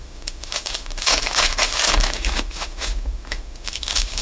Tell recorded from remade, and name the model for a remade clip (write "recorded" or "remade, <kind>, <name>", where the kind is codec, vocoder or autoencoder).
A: remade, autoencoder, DAC-VAE